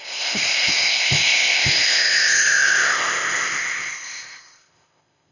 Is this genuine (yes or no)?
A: no